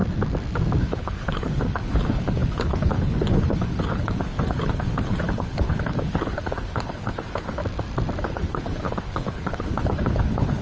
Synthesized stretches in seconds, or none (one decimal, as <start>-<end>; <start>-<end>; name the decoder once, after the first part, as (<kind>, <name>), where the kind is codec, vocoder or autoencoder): 0.8-7.6 (codec, HILCodec); 8.2-10.6